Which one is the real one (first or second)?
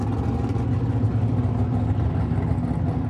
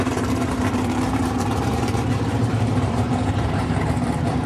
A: first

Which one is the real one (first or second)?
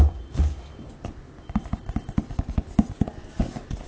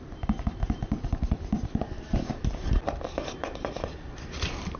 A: first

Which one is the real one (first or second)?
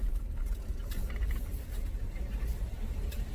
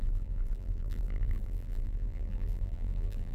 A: first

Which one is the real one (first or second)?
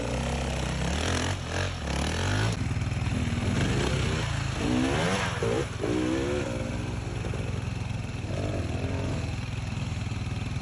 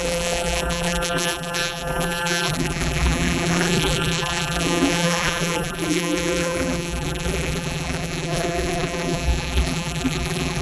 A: first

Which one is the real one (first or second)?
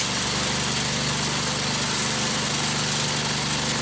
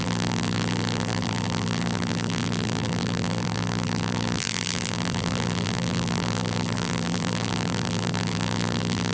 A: first